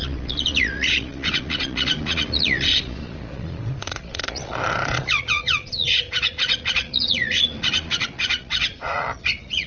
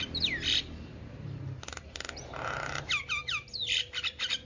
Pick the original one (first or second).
second